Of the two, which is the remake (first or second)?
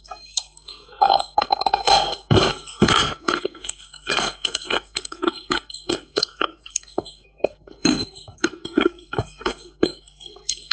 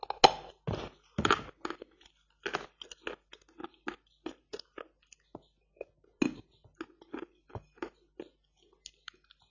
first